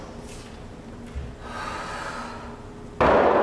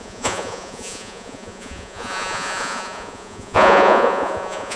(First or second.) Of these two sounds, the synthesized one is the second